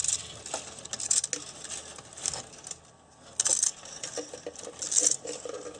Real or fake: real